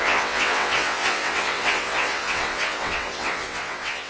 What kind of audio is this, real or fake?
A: fake